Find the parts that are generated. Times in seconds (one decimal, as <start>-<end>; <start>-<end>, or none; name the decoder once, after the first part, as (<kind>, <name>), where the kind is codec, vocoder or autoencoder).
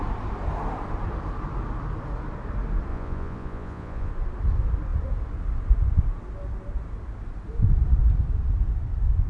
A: 2.9-4.1 (vocoder, Vocos)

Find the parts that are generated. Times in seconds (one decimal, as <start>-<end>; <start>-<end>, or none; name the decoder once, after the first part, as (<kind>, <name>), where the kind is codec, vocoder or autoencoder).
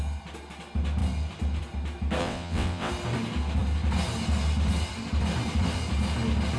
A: 2.2-2.9 (vocoder, WaveNeXt)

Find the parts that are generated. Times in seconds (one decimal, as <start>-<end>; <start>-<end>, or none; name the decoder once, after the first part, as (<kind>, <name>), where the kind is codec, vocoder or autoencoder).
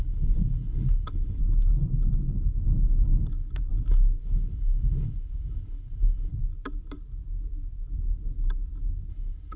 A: 0.0-1.4 (codec, HILCodec); 4.2-6.3; 9.1-9.6